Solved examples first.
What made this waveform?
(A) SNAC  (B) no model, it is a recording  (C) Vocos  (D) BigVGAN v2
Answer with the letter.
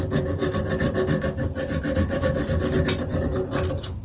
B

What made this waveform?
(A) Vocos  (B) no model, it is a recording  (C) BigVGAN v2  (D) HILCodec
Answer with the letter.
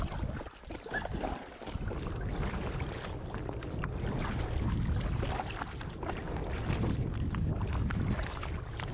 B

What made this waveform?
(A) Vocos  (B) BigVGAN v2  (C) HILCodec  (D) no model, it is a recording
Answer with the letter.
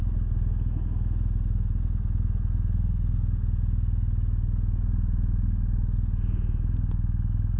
D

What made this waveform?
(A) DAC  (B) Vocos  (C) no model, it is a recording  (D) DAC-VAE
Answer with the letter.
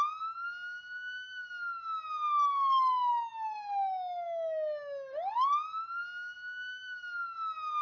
C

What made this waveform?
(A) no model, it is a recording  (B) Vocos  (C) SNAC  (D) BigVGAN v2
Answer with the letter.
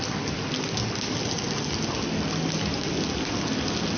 A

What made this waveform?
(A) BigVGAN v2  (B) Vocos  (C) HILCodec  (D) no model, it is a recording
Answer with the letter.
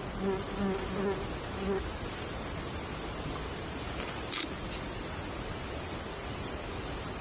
D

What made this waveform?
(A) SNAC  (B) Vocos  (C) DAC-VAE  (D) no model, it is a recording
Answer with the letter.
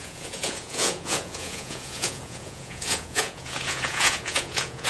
B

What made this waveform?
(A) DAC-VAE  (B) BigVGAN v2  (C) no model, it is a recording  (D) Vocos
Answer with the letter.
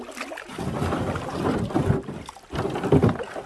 C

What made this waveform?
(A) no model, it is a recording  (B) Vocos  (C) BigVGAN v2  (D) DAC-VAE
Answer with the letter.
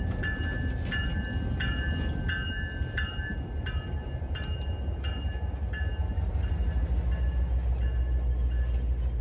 A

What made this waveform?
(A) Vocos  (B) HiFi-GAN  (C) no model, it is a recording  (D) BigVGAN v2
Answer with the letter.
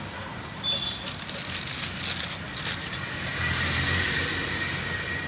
C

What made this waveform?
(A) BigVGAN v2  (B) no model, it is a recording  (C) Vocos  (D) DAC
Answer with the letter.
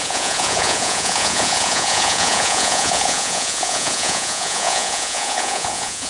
C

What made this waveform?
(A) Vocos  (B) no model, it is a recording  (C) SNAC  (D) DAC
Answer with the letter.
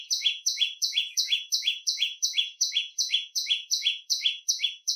A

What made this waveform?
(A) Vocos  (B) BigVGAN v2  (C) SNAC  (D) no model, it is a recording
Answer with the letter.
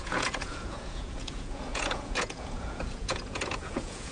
A